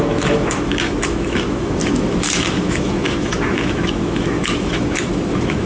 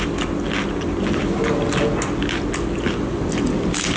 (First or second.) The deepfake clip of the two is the first